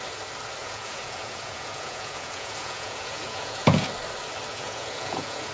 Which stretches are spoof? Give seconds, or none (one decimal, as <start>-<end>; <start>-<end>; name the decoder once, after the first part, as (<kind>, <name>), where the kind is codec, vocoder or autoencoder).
0.6-3.9 (vocoder, Vocos); 4.5-5.5